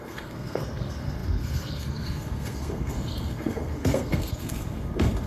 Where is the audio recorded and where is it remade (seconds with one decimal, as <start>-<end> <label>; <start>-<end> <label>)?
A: 0.0-5.3 remade